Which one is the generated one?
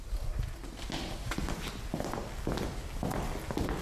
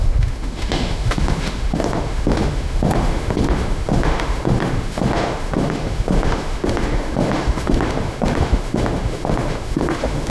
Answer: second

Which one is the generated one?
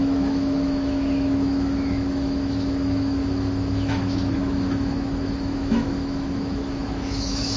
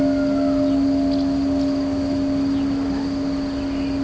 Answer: first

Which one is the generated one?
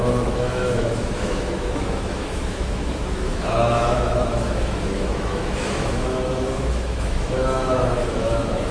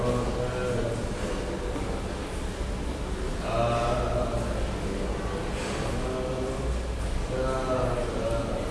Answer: first